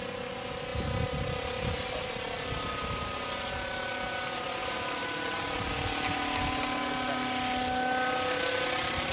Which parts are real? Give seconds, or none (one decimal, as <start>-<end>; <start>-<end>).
0.0-4.6; 5.7-9.1